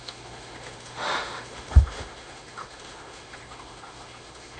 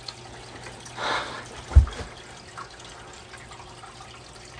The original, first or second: second